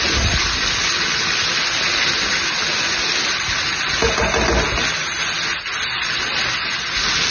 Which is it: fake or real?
real